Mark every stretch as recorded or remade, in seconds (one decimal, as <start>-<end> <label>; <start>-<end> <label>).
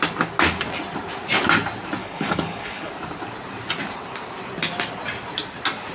0.0-2.0 recorded; 2.0-2.9 remade; 2.9-5.9 recorded